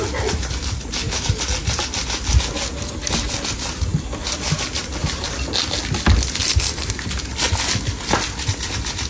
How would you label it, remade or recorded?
recorded